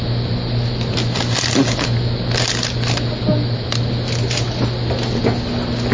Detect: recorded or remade recorded